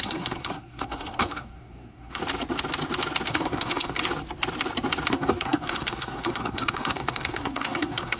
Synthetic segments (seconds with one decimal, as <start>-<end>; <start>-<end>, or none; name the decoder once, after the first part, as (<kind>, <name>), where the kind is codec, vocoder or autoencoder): 0.0-2.2 (codec, SNAC); 3.3-4.0; 5.1-8.2